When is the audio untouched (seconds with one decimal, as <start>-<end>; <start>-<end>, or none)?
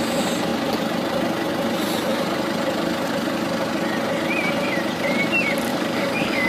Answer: 0.0-5.7